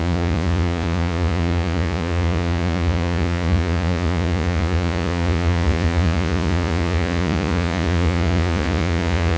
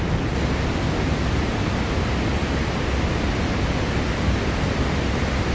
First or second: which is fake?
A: first